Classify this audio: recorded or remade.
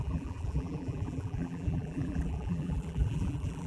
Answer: remade